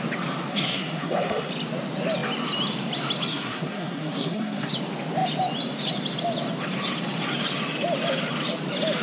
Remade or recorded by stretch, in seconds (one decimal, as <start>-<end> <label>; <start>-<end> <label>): 0.0-0.5 recorded; 0.5-1.5 remade; 1.5-3.3 recorded; 3.3-4.7 remade; 4.7-9.0 recorded